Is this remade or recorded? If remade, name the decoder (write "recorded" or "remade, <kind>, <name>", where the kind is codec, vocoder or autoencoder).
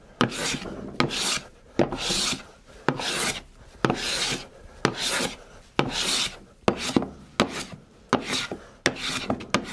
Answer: recorded